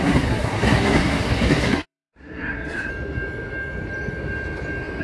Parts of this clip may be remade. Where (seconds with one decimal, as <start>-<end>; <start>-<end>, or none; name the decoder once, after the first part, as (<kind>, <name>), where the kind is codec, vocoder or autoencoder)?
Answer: 0.0-2.9 (codec, SNAC)